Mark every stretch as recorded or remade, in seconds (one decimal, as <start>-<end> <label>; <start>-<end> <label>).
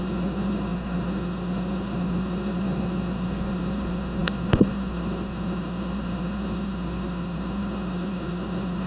0.0-8.9 remade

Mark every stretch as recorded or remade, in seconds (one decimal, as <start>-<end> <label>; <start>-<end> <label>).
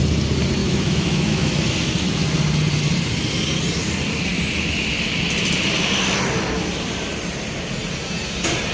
0.0-0.6 recorded; 0.6-1.7 remade; 1.7-8.7 recorded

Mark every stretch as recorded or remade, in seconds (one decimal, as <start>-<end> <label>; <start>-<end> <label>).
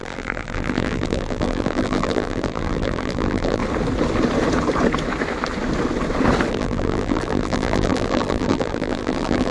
0.0-3.6 remade; 3.6-6.5 recorded; 6.5-9.5 remade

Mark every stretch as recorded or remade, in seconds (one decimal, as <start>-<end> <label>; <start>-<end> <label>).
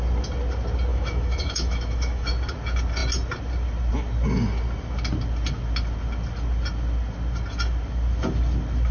0.0-0.9 recorded; 0.9-2.3 remade; 2.3-8.9 recorded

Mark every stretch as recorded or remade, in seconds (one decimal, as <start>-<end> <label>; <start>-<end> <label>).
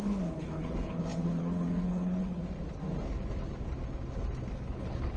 0.0-2.4 remade; 2.4-4.5 recorded; 4.5-5.2 remade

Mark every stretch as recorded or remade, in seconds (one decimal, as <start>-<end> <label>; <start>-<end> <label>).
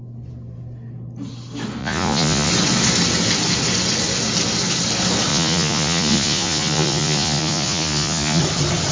0.0-1.8 recorded; 1.8-2.5 remade; 2.5-5.3 recorded; 5.3-8.4 remade; 8.4-8.9 recorded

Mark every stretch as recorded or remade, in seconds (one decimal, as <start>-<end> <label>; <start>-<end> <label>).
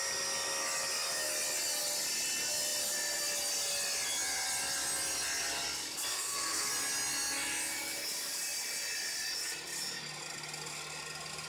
0.0-6.1 recorded; 6.1-6.7 remade; 6.7-11.5 recorded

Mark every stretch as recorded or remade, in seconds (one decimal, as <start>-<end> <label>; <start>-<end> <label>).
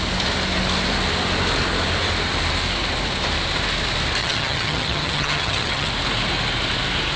0.0-4.2 recorded; 4.2-5.9 remade; 5.9-7.2 recorded